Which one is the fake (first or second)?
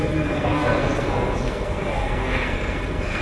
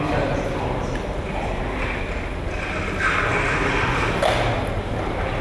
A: first